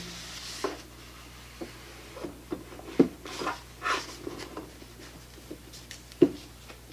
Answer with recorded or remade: recorded